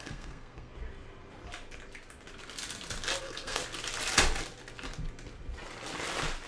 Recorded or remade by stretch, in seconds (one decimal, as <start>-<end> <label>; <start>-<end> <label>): 0.0-0.7 remade; 0.7-3.2 recorded; 3.2-3.6 remade; 3.6-6.5 recorded